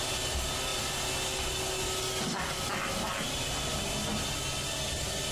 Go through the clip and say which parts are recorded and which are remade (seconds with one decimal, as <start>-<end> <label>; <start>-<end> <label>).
0.0-5.3 recorded